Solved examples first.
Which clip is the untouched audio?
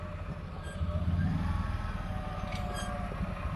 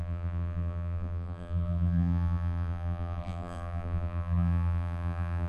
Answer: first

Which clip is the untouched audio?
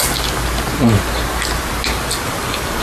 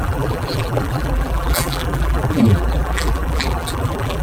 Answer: first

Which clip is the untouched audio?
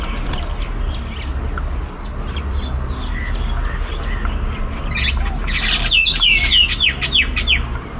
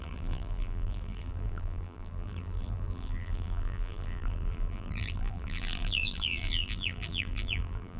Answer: first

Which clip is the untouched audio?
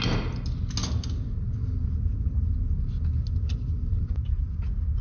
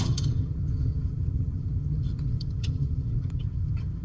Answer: first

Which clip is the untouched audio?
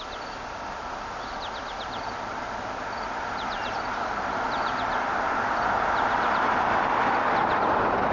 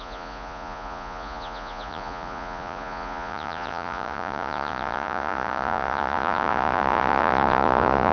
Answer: first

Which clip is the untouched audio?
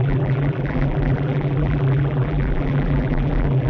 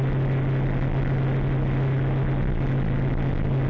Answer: second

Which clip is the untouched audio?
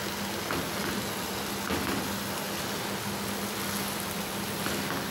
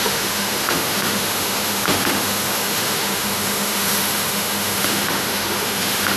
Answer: first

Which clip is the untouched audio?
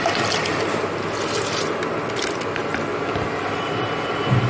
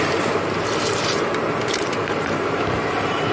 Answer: first